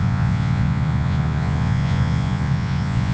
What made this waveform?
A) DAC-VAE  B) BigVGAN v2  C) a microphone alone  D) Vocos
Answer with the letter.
D